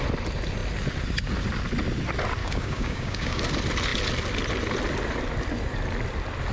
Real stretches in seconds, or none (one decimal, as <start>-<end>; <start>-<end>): 0.0-2.4; 3.4-6.5